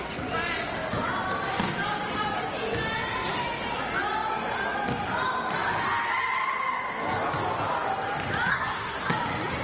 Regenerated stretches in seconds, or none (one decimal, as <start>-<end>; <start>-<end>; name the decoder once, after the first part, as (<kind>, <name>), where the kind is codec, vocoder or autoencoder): 8.5-9.1 (codec, SNAC)